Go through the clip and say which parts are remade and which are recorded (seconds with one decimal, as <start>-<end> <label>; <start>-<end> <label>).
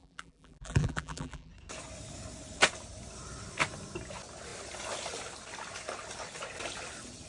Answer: 0.0-1.5 remade; 1.5-7.3 recorded